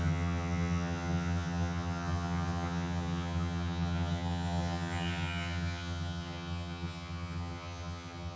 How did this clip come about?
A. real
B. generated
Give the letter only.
B